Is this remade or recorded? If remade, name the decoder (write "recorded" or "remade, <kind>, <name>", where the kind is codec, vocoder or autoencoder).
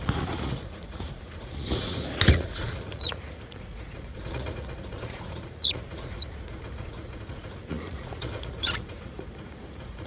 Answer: remade, vocoder, Vocos